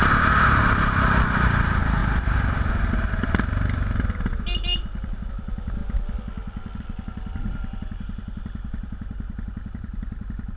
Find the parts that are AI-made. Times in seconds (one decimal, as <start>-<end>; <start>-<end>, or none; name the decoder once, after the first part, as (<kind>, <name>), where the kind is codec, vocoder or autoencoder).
0.0-2.0 (vocoder, BigVGAN v2); 5.3-5.8; 6.8-10.6